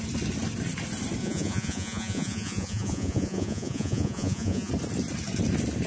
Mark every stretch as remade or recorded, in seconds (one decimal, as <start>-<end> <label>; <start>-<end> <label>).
0.0-1.2 recorded; 1.2-4.7 remade; 4.7-5.9 recorded